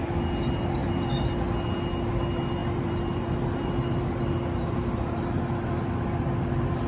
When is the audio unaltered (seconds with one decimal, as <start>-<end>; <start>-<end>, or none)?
0.0-2.6; 5.4-6.9